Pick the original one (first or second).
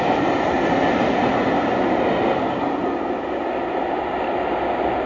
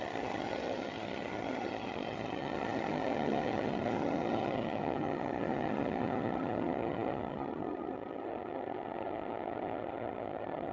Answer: first